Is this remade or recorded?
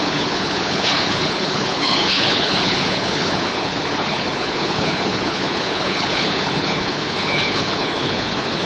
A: remade